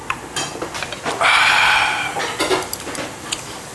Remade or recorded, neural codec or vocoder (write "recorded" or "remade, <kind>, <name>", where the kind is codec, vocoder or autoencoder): recorded